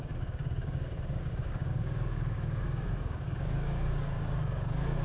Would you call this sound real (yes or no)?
no